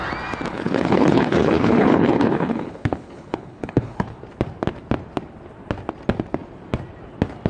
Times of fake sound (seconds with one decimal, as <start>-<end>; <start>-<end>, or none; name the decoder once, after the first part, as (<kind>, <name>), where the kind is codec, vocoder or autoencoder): 0.5-4.2 (codec, HILCodec)